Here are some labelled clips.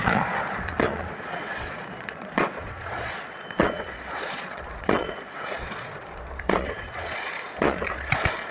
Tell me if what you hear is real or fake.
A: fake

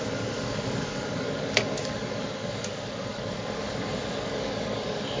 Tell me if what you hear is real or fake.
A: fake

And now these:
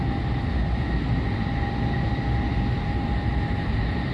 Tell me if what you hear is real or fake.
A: real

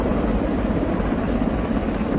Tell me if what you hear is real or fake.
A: real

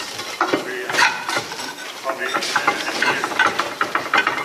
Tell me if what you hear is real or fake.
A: fake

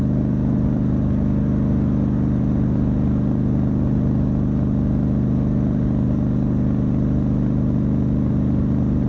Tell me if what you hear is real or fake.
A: real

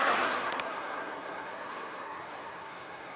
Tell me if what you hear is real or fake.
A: fake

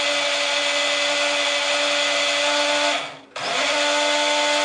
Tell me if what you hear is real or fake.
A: real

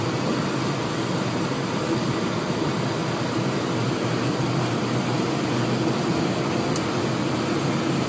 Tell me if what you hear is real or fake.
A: real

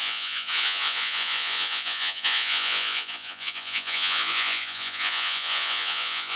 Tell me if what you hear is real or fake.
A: fake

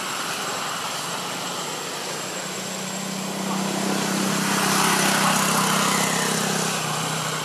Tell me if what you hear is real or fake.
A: real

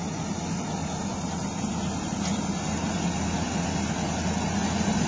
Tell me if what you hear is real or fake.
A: real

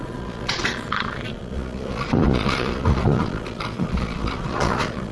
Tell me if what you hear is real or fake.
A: fake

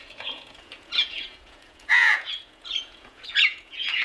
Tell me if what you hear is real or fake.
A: fake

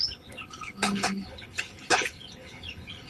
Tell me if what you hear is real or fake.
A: fake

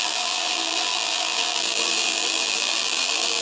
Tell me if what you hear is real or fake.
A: fake